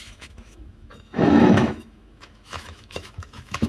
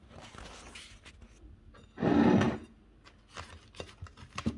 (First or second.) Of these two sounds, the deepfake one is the first